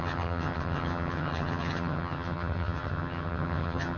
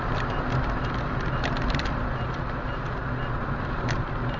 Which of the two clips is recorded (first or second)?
second